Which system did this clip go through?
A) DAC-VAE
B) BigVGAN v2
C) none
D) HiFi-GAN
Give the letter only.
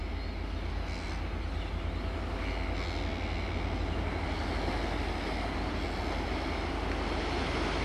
C